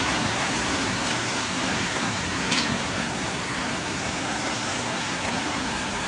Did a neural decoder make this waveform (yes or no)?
yes